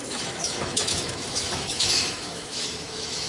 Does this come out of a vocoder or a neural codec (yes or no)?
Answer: yes